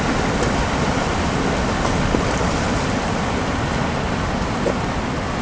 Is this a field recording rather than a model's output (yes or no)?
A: yes